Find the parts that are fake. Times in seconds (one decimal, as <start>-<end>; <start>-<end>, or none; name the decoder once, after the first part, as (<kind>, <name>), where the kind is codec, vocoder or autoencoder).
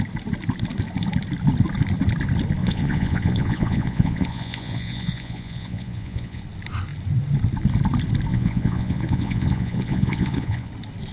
2.6-6.4 (vocoder, Vocos); 8.3-10.7